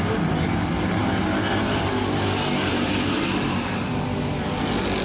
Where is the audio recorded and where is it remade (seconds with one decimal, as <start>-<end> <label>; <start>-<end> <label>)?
0.0-5.0 recorded

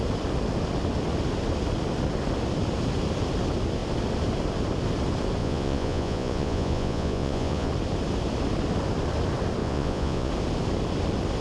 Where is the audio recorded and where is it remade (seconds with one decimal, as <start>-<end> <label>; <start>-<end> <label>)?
0.0-5.4 recorded; 5.4-7.7 remade; 7.7-9.6 recorded; 9.6-10.3 remade; 10.3-11.4 recorded

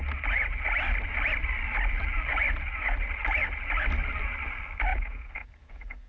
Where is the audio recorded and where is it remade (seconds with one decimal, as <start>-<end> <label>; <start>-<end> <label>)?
0.0-4.9 recorded; 4.9-6.1 remade

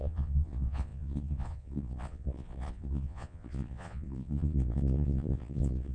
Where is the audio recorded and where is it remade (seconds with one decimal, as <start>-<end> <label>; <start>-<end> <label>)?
0.0-5.9 remade

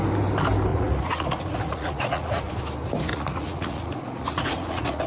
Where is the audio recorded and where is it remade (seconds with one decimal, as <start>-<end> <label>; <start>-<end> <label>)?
0.0-0.7 recorded; 0.7-2.5 remade; 2.5-3.1 recorded; 3.1-5.1 remade

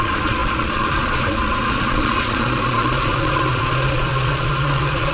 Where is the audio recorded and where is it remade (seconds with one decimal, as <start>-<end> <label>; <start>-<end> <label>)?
0.0-5.1 remade

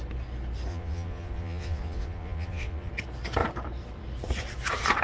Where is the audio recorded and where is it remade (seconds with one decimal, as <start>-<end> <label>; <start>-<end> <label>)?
0.0-0.7 recorded; 0.7-2.9 remade; 2.9-5.0 recorded

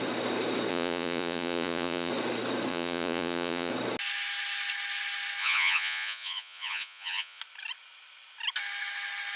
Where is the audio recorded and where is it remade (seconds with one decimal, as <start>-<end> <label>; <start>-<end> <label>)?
0.0-0.7 recorded; 0.7-2.1 remade; 2.1-2.7 recorded; 2.7-3.7 remade; 3.7-5.4 recorded; 5.4-7.4 remade; 7.4-9.4 recorded